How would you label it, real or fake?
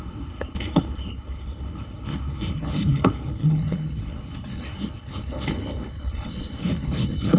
fake